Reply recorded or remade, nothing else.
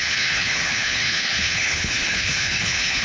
remade